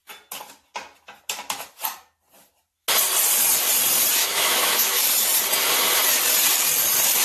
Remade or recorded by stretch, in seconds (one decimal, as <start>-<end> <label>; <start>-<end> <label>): 0.0-4.2 recorded; 4.2-5.0 remade; 5.0-7.2 recorded